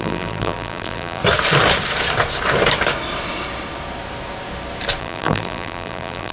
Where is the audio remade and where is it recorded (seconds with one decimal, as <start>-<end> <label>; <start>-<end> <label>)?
0.0-1.2 remade; 1.2-5.0 recorded; 5.0-6.3 remade